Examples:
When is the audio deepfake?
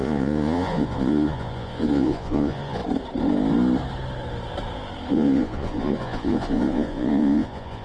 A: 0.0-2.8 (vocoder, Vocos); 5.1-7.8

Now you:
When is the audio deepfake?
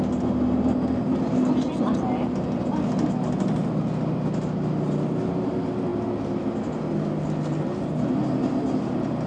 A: none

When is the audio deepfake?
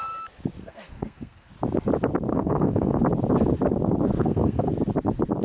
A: 0.6-1.5 (codec, SNAC); 2.3-3.0; 4.2-4.7